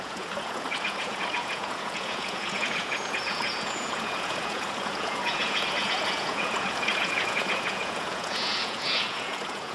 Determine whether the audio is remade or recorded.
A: remade